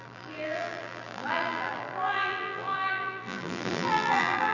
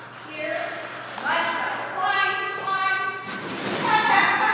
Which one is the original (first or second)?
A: second